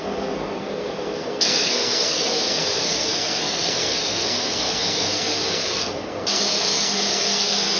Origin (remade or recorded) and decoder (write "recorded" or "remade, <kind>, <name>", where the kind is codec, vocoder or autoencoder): remade, codec, SNAC